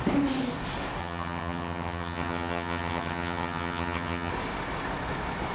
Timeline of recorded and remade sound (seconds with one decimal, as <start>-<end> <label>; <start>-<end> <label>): 0.0-1.0 recorded; 1.0-4.3 remade; 4.3-5.5 recorded